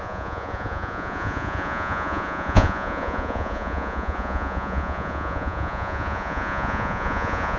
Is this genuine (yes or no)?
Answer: no